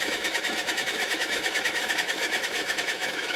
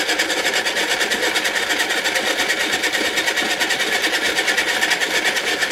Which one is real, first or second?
second